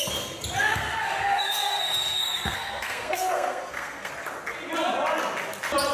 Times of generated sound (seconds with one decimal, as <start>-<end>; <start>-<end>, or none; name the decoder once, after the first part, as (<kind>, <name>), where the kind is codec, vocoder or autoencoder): 0.6-4.1 (codec, SNAC)